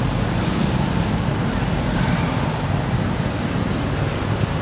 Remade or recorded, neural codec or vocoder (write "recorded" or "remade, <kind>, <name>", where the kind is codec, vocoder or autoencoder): recorded